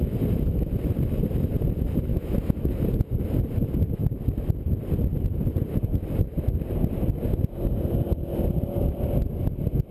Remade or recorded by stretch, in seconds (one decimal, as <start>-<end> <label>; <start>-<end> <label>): 0.0-2.1 recorded; 2.1-2.7 remade; 2.7-9.9 recorded